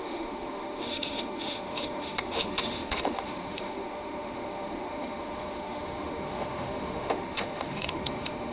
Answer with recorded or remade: remade